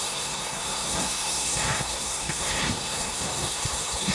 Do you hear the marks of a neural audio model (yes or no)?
yes